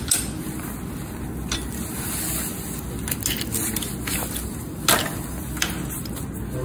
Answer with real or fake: real